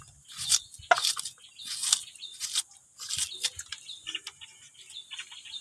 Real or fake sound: real